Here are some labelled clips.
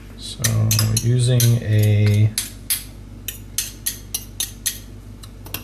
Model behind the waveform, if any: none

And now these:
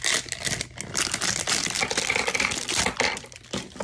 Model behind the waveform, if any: none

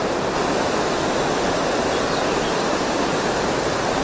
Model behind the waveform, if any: none